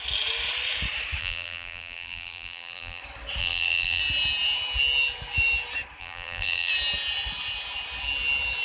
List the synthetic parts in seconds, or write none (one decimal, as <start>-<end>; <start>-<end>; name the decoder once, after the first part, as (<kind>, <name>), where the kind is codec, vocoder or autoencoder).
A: 1.2-3.0 (vocoder, BigVGAN v2); 3.4-4.0; 6.0-6.7